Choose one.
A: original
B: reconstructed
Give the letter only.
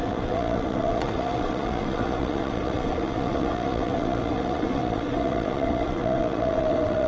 B